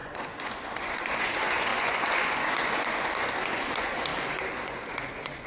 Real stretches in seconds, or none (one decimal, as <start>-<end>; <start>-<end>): none